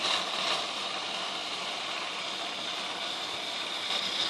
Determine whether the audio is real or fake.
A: real